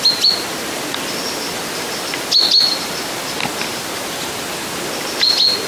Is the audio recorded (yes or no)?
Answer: yes